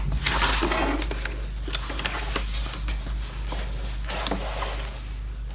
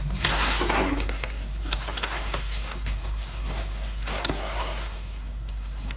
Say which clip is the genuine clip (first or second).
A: first